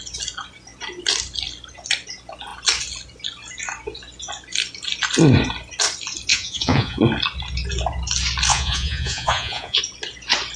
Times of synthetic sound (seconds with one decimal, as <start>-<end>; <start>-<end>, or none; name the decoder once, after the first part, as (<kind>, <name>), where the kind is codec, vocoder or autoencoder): 6.3-7.0 (vocoder, Vocos); 8.5-9.8